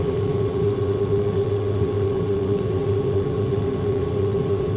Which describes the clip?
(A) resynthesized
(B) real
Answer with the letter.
A